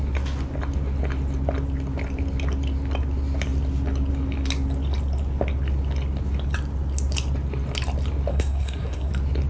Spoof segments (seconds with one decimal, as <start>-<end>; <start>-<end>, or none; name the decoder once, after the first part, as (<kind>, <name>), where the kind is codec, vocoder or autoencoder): 8.3-9.1 (codec, SNAC)